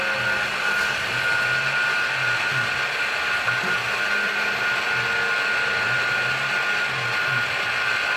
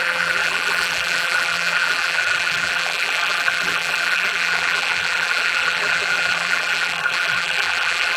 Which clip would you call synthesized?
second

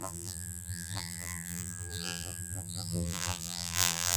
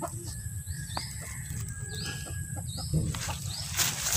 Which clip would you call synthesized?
first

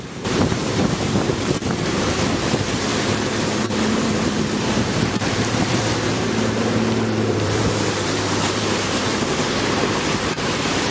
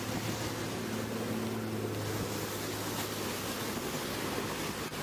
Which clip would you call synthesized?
first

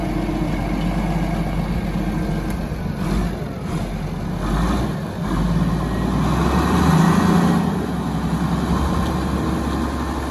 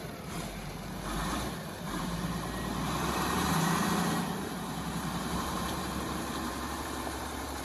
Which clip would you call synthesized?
second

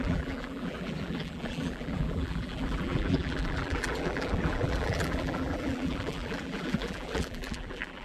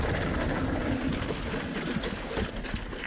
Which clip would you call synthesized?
first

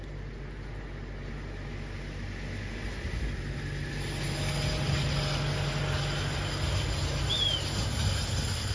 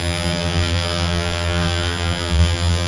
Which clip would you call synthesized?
second